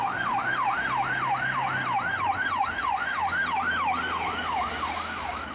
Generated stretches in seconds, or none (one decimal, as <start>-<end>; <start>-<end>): 2.1-3.2